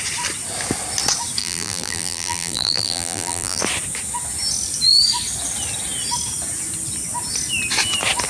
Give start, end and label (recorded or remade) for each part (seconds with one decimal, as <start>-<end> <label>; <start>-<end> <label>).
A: 0.0-1.4 recorded; 1.4-3.6 remade; 3.6-8.3 recorded